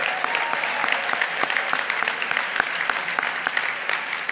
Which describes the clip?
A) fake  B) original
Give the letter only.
B